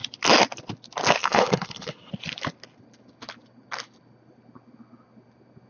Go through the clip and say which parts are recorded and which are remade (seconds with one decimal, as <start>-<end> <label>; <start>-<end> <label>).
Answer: 0.0-1.2 recorded; 1.2-2.1 remade; 2.1-5.7 recorded